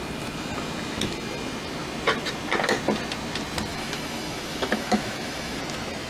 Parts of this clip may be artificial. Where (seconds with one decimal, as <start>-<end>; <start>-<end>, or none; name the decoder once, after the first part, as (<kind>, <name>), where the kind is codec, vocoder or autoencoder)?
3.7-5.6 (autoencoder, DAC-VAE)

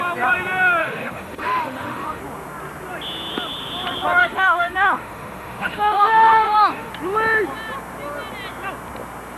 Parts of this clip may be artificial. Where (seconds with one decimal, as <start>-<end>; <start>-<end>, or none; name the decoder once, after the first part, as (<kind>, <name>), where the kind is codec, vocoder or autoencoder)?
0.8-2.2 (autoencoder, DAC-VAE); 4.2-6.9

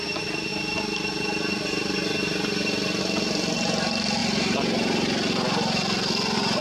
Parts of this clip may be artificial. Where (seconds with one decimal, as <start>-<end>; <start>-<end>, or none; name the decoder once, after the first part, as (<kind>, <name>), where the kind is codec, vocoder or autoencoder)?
none